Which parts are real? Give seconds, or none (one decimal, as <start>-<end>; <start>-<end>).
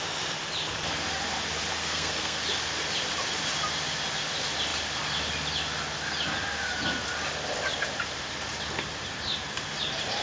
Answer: 0.0-1.8; 2.4-10.2